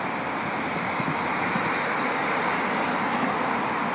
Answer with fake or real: real